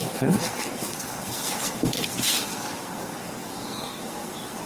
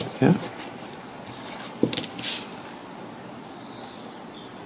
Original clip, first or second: second